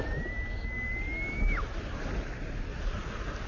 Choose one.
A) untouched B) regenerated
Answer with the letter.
A